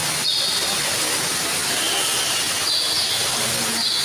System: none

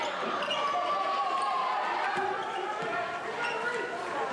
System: none